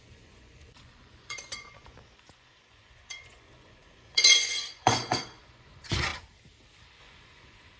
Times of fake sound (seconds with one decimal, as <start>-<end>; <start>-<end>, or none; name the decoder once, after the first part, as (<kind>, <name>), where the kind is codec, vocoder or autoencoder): 0.0-6.1 (vocoder, Vocos); 7.0-7.8